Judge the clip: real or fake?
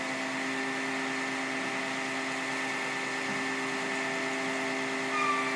real